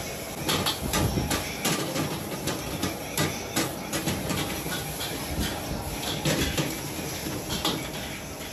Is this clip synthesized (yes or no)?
no